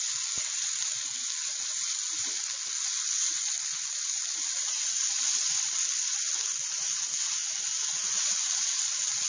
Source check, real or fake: real